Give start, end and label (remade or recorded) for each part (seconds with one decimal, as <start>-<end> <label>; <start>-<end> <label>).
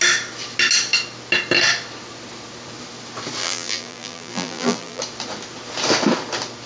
0.0-3.4 recorded; 3.4-5.0 remade; 5.0-6.7 recorded